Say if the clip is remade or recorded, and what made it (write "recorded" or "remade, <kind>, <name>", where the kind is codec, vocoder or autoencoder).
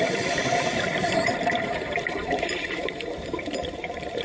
remade, vocoder, BigVGAN v2